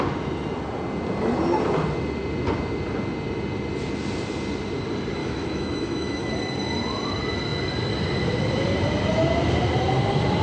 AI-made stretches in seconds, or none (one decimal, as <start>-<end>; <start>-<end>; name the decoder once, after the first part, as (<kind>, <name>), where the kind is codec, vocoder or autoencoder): 5.2-6.3 (autoencoder, DAC-VAE)

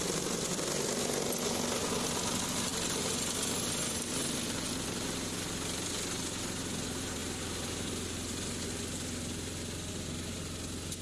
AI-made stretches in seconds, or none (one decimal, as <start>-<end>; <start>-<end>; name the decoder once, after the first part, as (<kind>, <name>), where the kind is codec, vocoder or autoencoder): none

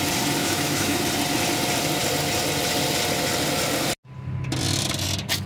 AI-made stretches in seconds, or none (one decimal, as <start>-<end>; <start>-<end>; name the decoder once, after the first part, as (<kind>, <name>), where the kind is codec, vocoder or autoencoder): 0.4-1.0 (autoencoder, DAC-VAE)

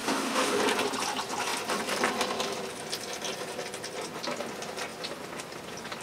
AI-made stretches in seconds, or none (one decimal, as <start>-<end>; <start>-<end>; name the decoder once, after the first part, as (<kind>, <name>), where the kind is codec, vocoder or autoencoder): 0.0-0.6 (autoencoder, DAC-VAE)

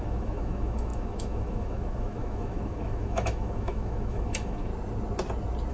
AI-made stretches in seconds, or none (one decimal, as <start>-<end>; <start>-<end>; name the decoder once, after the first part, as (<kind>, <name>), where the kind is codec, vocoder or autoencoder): 0.0-4.7 (autoencoder, DAC-VAE)

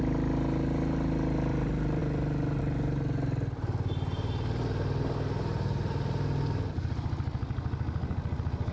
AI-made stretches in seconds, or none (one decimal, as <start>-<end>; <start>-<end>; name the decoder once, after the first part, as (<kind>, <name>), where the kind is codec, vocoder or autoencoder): none